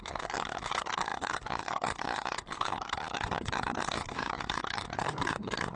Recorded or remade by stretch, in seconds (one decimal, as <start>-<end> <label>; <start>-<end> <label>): 0.0-5.8 remade